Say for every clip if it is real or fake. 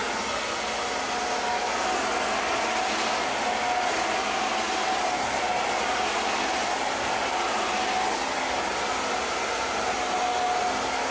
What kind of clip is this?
real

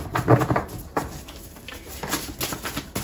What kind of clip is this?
real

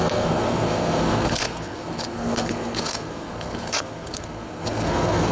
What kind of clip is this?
fake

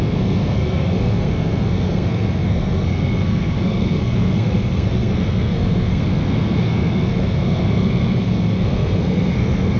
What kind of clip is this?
fake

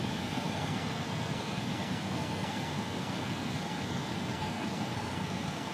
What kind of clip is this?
fake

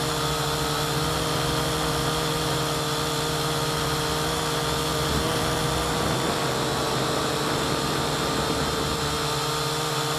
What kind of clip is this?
real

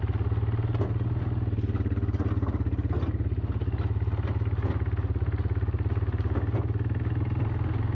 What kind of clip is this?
real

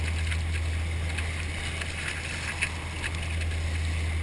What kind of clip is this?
real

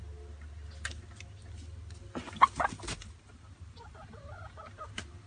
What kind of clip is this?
real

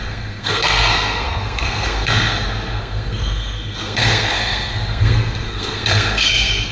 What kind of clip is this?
fake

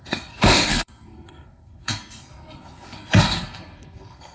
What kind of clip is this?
fake